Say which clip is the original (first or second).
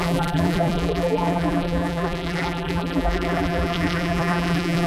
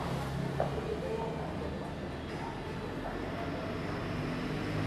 second